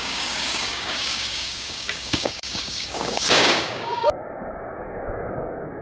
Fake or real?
fake